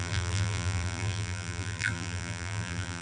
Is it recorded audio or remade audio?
remade